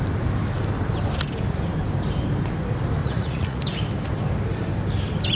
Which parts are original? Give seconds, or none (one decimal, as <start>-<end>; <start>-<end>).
0.0-3.0; 3.6-5.4